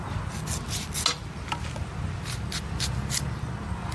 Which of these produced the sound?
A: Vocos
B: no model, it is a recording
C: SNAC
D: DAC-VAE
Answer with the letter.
B